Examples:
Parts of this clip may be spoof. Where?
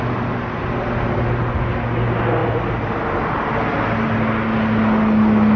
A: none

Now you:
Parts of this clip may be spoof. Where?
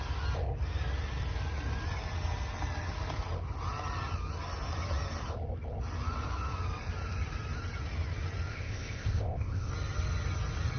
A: 8.5-9.7 (codec, ZipCodec)